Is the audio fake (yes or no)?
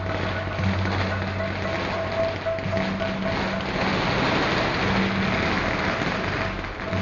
no